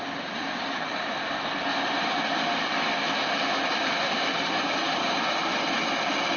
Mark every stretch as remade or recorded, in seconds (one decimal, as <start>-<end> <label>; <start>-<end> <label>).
0.0-6.4 recorded